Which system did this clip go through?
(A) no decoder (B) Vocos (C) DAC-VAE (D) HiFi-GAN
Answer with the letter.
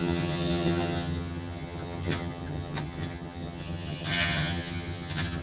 D